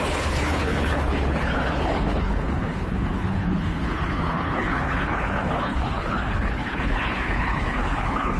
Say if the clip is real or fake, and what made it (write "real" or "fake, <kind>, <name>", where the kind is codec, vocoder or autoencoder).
fake, codec, HILCodec